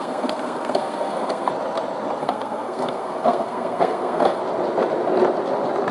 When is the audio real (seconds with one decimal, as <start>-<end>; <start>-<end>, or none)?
1.5-2.2; 4.4-5.9